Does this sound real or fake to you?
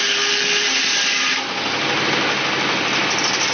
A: real